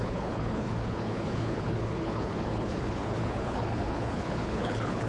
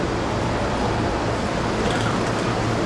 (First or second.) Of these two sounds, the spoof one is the first